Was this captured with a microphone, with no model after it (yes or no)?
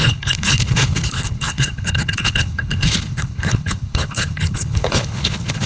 no